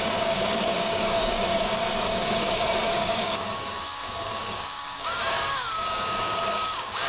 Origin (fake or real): fake